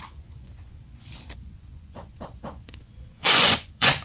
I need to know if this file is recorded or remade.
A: remade